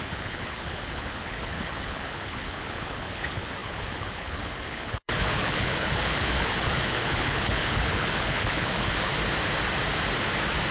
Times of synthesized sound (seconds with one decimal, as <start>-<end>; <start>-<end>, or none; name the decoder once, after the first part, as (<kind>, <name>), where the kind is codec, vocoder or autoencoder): 0.0-9.1 (codec, HILCodec)